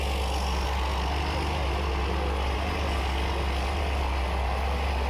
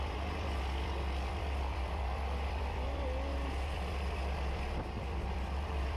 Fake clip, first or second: second